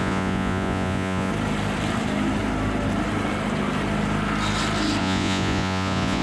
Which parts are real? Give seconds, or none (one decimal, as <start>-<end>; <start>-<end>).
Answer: 1.3-5.0